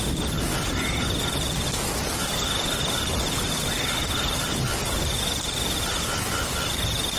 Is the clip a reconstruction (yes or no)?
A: no